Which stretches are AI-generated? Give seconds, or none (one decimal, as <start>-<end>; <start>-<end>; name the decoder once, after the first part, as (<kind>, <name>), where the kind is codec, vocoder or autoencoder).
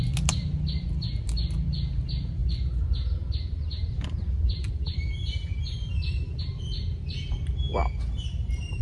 2.4-6.4 (vocoder, BigVGAN v2); 7.8-8.8